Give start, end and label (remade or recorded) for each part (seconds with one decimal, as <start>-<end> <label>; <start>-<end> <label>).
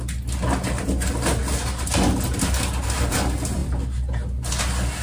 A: 0.0-5.0 recorded